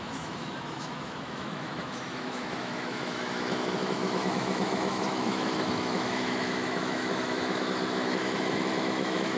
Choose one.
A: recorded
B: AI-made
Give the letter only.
B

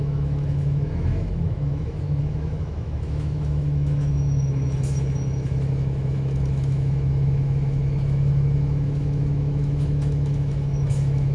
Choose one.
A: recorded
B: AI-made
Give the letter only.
B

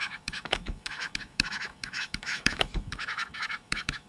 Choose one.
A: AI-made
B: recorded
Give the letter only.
A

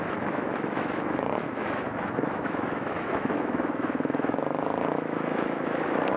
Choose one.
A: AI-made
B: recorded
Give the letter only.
A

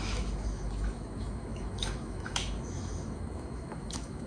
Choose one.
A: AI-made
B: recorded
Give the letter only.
A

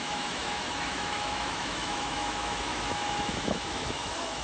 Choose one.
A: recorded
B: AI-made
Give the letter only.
B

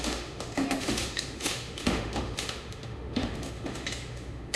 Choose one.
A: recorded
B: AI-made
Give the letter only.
B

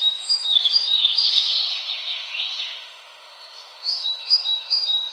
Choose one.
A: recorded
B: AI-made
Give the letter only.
B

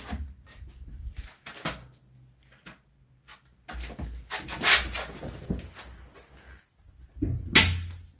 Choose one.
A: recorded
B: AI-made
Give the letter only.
A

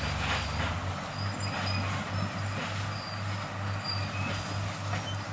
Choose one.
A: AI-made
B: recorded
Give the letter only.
B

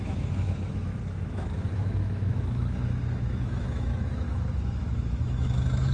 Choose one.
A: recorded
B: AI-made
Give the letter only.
B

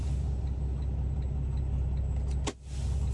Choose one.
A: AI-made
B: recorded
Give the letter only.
B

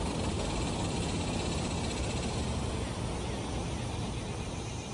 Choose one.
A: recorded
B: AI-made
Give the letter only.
A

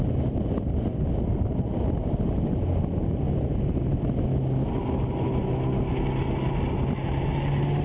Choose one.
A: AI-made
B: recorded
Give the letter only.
B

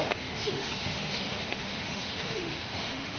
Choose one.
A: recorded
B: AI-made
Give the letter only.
B